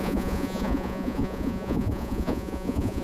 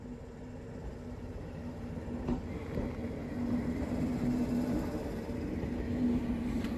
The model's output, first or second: first